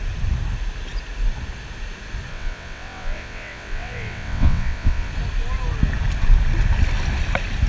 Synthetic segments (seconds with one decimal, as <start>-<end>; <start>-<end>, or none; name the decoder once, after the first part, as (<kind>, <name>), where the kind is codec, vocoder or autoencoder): 2.3-5.1 (vocoder, WaveNeXt)